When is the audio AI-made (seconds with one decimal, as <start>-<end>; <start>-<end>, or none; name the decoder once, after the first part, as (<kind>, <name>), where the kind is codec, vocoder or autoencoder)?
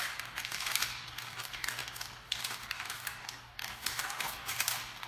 0.0-5.1 (codec, DAC)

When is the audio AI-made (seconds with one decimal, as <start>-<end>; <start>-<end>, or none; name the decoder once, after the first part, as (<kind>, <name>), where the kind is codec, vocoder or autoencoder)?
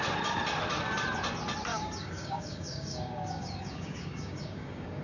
1.7-5.0 (codec, DAC)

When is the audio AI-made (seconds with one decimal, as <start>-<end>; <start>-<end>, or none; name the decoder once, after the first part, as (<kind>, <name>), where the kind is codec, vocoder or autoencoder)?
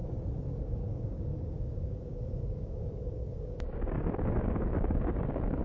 0.6-5.6 (codec, DAC)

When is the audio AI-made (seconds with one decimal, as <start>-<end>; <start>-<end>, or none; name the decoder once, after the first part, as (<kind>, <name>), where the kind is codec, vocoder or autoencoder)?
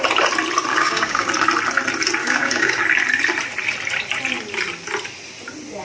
0.7-1.3 (codec, DAC); 2.2-2.8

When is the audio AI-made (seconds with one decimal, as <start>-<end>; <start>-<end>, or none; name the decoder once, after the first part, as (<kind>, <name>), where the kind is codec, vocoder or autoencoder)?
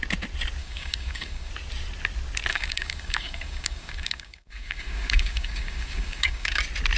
0.6-1.5 (codec, DAC); 2.5-6.6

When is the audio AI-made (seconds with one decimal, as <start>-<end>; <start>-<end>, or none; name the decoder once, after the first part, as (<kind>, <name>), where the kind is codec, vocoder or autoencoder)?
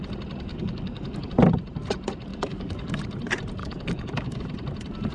0.5-1.3 (codec, DAC); 2.3-3.0; 3.6-4.4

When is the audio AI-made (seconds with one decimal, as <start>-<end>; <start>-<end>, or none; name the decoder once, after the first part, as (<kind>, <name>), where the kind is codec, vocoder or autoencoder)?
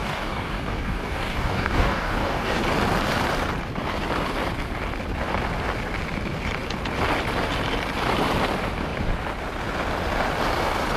0.0-2.6 (codec, DAC)